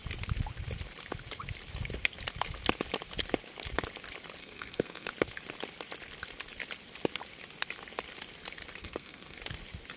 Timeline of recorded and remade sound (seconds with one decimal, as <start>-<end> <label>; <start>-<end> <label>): 0.0-4.4 recorded; 4.4-5.1 remade; 5.1-8.8 recorded; 8.8-9.4 remade; 9.4-10.0 recorded